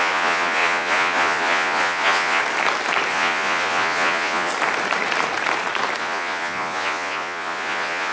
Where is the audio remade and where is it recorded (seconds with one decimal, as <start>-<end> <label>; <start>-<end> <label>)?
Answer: 0.0-2.4 remade; 2.4-3.1 recorded; 3.1-4.5 remade; 4.5-6.0 recorded; 6.0-8.1 remade